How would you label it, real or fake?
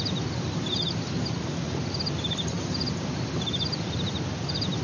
real